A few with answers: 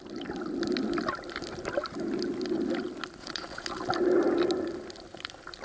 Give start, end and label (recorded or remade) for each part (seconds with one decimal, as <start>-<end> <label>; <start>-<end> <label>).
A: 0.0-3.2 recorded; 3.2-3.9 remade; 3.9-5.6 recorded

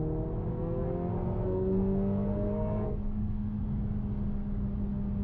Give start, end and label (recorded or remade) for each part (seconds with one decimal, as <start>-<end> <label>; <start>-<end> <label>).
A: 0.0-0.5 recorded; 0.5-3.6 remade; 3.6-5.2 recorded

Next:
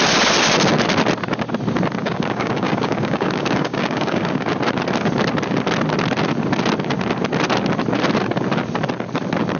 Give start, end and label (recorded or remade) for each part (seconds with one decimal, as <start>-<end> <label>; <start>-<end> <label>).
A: 0.0-2.0 recorded; 2.0-4.4 remade; 4.4-9.6 recorded

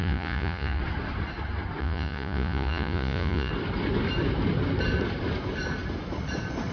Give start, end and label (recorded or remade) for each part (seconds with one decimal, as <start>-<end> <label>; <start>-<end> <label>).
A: 0.0-0.8 remade; 0.8-1.8 recorded; 1.8-3.5 remade; 3.5-6.7 recorded